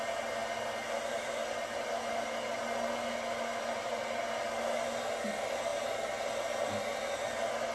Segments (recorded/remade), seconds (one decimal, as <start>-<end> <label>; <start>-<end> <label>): 0.0-7.7 recorded